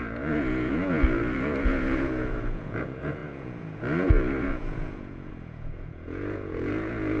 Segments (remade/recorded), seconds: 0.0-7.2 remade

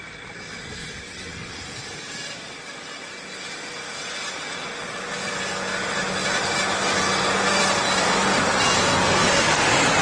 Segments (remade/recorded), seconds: 0.0-0.8 recorded; 0.8-1.5 remade; 1.5-10.0 recorded

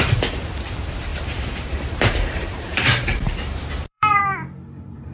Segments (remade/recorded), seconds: 0.0-1.1 recorded; 1.1-4.2 remade; 4.2-5.1 recorded

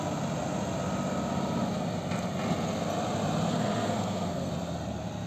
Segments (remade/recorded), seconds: 0.0-3.5 recorded; 3.5-4.5 remade; 4.5-5.3 recorded